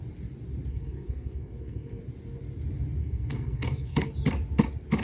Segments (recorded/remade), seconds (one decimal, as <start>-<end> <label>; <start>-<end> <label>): 0.0-0.7 recorded; 0.7-2.0 remade; 2.0-3.0 recorded; 3.0-4.1 remade; 4.1-5.0 recorded